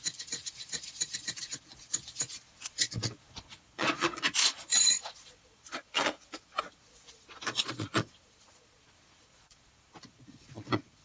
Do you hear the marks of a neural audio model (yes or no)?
yes